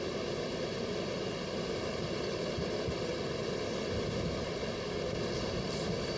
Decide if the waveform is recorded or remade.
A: recorded